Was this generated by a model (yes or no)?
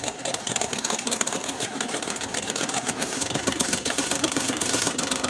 yes